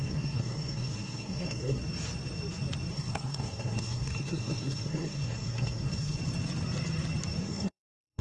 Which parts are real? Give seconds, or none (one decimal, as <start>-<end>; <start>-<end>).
1.8-2.9; 6.2-7.4